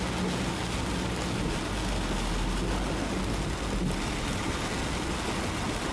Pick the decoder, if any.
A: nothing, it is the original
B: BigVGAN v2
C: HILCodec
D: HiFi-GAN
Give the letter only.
A